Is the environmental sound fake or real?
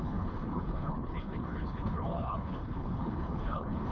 fake